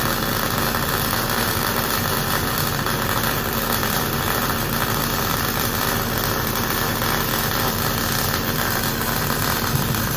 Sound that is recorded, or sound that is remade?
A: remade